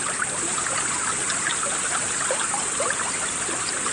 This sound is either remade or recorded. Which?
recorded